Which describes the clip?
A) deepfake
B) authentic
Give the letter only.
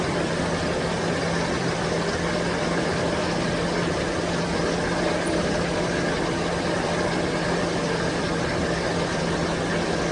B